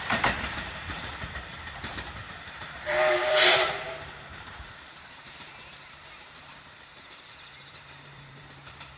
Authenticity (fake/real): fake